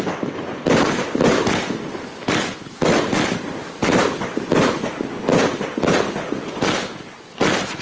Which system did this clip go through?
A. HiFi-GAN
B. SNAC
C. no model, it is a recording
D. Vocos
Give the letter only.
C